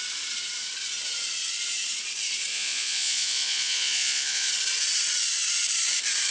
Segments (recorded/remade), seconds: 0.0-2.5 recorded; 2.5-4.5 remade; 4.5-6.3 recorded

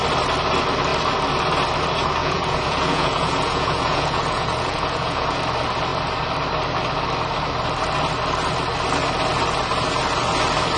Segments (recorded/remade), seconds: 0.0-2.2 recorded; 2.2-5.4 remade; 5.4-10.8 recorded

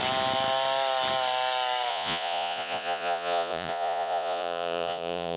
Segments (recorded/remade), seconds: 0.0-1.9 recorded; 1.9-5.4 remade

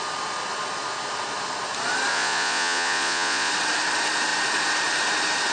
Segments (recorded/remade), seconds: 0.0-2.1 recorded; 2.1-3.5 remade; 3.5-5.5 recorded